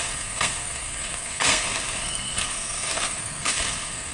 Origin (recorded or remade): remade